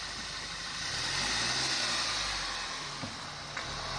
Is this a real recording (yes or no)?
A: yes